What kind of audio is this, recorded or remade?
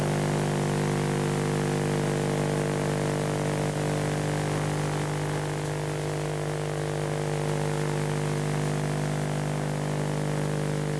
recorded